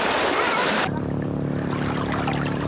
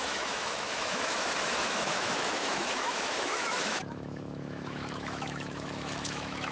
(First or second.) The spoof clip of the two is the second